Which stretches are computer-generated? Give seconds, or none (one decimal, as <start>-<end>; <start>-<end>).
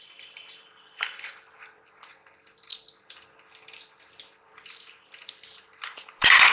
0.0-2.7; 3.4-6.5